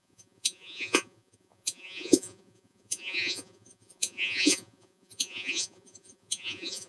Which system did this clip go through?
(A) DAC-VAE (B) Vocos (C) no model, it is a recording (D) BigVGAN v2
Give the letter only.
B